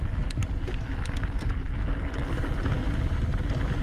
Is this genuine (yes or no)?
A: yes